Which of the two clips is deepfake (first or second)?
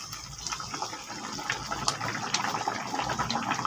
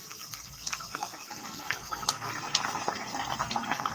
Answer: second